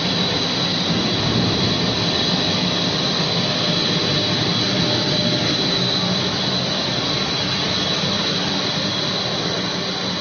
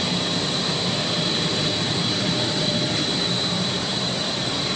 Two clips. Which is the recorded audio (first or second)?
first